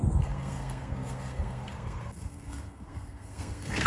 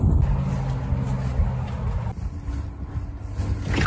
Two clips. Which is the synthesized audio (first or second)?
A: first